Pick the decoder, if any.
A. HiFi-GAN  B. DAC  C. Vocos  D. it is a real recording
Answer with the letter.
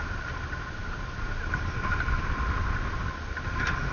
D